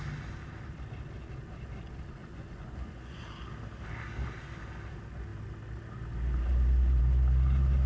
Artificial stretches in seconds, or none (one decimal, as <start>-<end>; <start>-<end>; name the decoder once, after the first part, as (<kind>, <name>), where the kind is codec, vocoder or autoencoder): 2.2-3.2 (vocoder, Vocos)

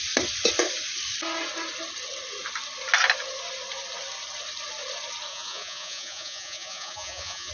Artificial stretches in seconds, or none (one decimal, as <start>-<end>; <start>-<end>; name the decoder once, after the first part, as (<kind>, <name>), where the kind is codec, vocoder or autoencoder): 5.3-7.5 (vocoder, Vocos)

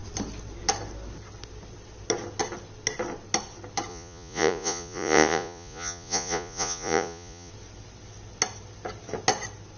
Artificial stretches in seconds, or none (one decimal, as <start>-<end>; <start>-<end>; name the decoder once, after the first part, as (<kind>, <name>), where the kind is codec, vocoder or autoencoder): 3.9-7.5 (vocoder, Vocos)

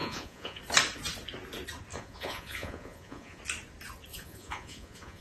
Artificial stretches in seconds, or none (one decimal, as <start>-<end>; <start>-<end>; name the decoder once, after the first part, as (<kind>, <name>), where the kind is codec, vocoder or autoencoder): 0.0-0.6 (vocoder, Vocos); 1.9-3.4; 4.1-5.2